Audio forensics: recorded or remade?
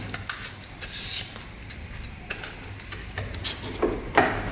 recorded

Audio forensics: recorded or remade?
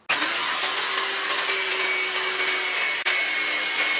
recorded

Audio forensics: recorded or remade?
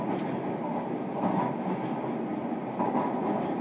recorded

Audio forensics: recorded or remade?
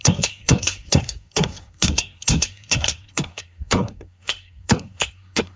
remade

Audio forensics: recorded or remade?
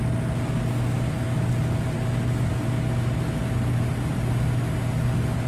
recorded